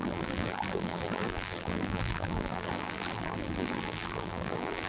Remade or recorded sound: remade